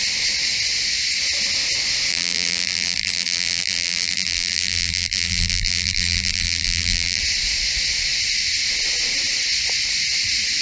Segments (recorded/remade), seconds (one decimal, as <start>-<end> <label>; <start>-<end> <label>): 0.0-2.1 recorded; 2.1-7.2 remade; 7.2-10.6 recorded